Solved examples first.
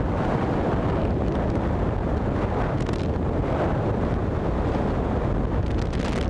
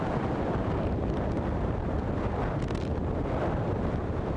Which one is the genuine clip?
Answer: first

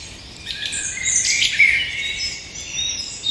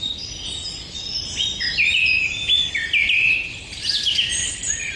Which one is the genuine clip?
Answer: second